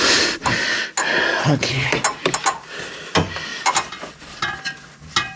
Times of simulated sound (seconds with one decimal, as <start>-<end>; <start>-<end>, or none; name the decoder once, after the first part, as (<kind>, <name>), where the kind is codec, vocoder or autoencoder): 1.4-1.9 (codec, HILCodec)